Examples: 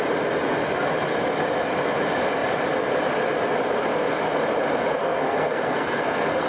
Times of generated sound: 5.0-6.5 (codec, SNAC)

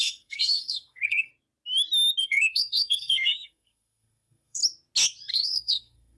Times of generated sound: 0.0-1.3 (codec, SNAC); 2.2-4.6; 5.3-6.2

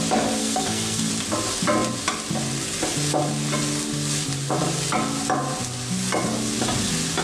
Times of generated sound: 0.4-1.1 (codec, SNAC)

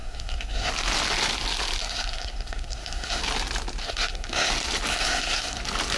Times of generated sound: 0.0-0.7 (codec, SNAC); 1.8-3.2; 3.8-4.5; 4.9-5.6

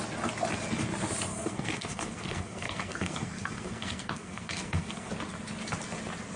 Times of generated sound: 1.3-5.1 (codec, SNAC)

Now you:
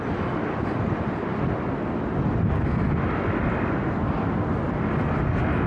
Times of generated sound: none

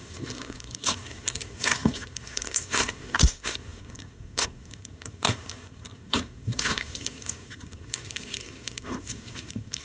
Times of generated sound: 0.0-9.8 (codec, SNAC)

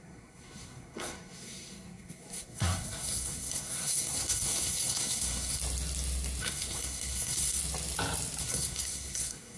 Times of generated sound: 0.0-5.6 (codec, SNAC); 6.4-7.6; 8.4-9.6